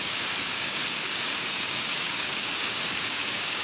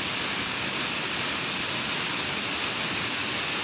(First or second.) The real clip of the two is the second